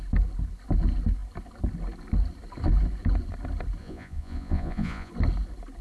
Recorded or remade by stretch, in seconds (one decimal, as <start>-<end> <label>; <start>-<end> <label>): 0.0-3.8 recorded; 3.8-5.1 remade; 5.1-5.8 recorded

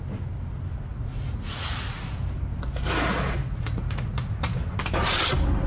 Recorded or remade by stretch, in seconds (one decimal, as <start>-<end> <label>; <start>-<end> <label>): 0.0-0.9 recorded; 0.9-2.0 remade; 2.0-3.4 recorded; 3.4-4.6 remade; 4.6-5.7 recorded

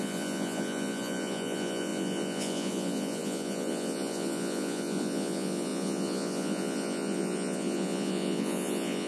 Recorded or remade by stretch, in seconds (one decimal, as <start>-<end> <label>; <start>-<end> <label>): 0.0-9.1 remade

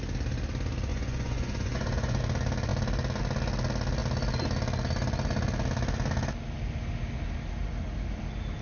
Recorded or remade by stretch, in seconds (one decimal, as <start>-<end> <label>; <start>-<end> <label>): 0.0-0.9 recorded; 0.9-2.2 remade; 2.2-8.6 recorded

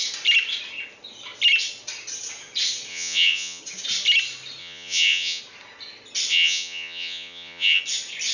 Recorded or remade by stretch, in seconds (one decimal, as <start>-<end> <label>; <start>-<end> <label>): 0.0-2.9 recorded; 2.9-3.6 remade; 3.6-4.6 recorded; 4.6-5.4 remade; 5.4-6.3 recorded; 6.3-7.8 remade; 7.8-8.3 recorded

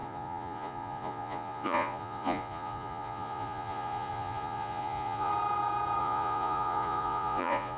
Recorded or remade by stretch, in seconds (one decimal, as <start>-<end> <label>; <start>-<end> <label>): 0.0-5.3 remade; 5.3-6.0 recorded; 6.0-7.8 remade

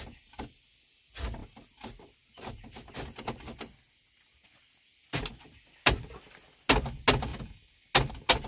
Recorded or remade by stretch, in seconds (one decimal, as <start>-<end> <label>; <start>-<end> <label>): 0.0-8.5 recorded